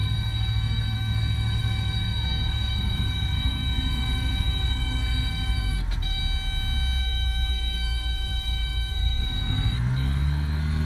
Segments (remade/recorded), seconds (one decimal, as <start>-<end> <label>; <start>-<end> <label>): 0.0-6.2 remade; 6.2-7.0 recorded; 7.0-10.9 remade